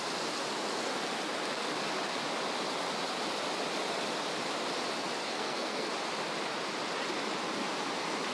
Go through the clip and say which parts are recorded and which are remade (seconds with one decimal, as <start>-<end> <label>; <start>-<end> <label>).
0.0-5.2 recorded; 5.2-5.9 remade; 5.9-8.3 recorded